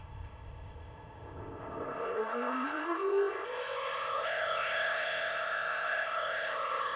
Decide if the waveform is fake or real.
fake